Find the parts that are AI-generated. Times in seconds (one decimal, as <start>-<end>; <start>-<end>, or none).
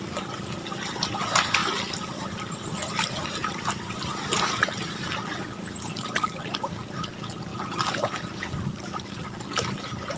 1.6-5.7